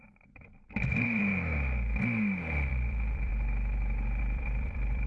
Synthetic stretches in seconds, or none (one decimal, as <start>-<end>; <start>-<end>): 0.0-1.3; 2.7-3.3; 4.2-5.1